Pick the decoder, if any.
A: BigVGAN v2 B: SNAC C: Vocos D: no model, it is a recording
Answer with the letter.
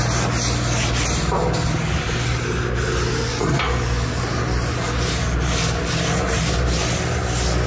D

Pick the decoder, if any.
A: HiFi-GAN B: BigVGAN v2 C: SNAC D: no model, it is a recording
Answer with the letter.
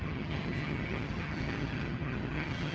A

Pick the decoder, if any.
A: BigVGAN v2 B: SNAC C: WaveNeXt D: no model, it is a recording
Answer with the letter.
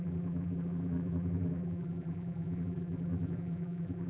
A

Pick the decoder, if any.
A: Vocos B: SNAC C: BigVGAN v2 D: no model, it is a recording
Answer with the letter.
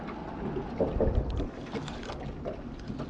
D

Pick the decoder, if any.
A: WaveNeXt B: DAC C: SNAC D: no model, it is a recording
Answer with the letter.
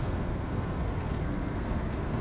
C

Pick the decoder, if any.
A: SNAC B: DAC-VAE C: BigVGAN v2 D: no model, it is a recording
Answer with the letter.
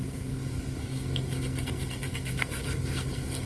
A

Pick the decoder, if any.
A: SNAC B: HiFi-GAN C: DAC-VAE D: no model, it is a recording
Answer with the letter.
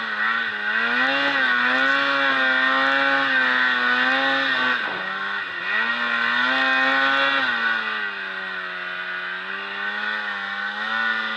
D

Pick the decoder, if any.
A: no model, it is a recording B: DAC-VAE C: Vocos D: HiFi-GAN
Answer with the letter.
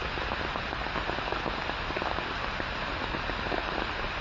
A